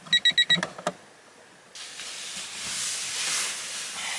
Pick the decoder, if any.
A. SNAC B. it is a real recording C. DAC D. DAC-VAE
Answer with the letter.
B